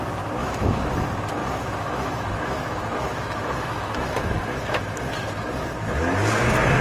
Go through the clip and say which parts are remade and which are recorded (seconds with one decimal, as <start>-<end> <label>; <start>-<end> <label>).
0.0-0.4 recorded; 0.4-0.9 remade; 0.9-1.4 recorded; 1.4-5.0 remade; 5.0-6.8 recorded